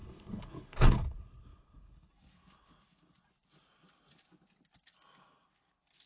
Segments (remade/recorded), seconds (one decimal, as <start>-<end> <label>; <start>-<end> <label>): 0.0-2.1 remade; 2.1-6.1 recorded